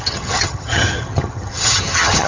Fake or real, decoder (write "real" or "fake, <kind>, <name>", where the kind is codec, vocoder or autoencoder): fake, vocoder, HiFi-GAN